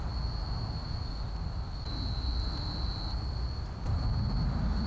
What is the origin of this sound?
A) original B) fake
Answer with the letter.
A